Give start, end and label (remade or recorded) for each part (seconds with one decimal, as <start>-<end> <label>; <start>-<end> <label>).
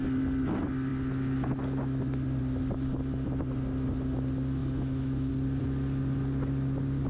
0.0-4.6 recorded; 4.6-5.3 remade; 5.3-7.1 recorded